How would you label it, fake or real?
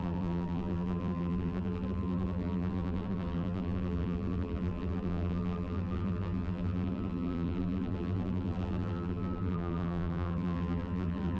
fake